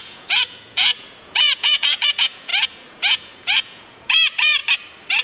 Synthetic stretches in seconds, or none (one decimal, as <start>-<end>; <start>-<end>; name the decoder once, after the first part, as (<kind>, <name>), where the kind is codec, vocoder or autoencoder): 0.0-4.6 (vocoder, Vocos)